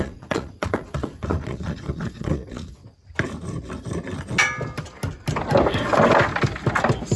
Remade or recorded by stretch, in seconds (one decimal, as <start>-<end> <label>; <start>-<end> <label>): 0.0-2.8 remade; 2.8-7.2 recorded